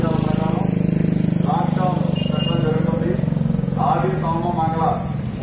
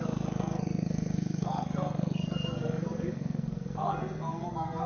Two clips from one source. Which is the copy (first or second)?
second